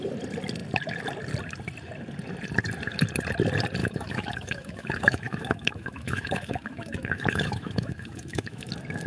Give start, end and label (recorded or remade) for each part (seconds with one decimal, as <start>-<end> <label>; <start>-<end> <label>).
0.0-3.8 recorded; 3.8-8.7 remade; 8.7-9.1 recorded